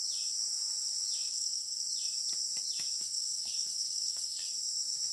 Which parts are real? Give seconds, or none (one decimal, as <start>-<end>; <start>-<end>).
0.0-1.3; 1.8-3.0; 4.5-5.1